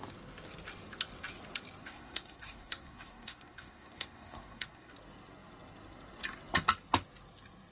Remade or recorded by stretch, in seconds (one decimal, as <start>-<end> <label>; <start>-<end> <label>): 0.0-1.8 recorded; 1.8-4.9 remade; 4.9-7.7 recorded

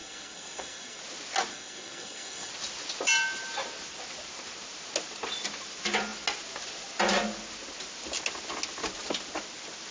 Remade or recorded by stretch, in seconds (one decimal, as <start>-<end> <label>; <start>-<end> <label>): 0.0-1.0 remade; 1.0-1.5 recorded; 1.5-2.5 remade; 2.5-9.9 recorded

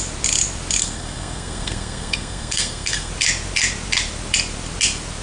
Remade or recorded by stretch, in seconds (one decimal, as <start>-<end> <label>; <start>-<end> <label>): 0.0-0.8 recorded; 0.8-3.1 remade; 3.1-5.2 recorded

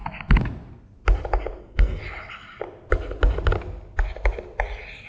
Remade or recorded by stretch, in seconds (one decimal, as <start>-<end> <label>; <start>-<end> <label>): 0.0-1.6 recorded; 1.6-2.0 remade; 2.0-5.1 recorded

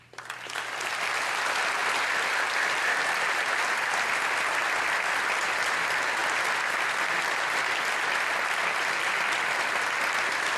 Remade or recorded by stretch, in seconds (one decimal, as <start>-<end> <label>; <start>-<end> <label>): 0.0-10.6 recorded